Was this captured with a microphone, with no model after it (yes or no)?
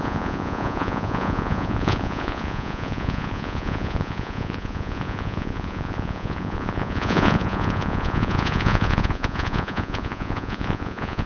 no